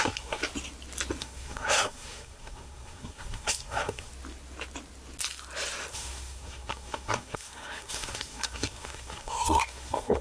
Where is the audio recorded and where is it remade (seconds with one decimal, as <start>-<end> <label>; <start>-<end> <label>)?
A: 0.0-0.4 remade; 0.4-1.2 recorded; 1.2-4.1 remade; 4.1-5.9 recorded; 5.9-10.2 remade